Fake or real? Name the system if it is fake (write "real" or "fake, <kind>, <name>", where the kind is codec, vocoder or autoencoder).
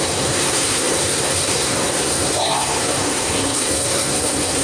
fake, codec, SNAC